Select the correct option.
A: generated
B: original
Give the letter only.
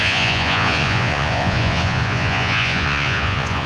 A